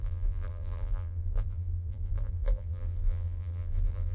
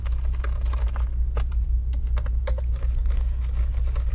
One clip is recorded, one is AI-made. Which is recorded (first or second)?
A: second